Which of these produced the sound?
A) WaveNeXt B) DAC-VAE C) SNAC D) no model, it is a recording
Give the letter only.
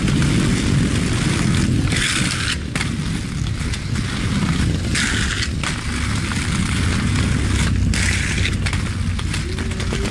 D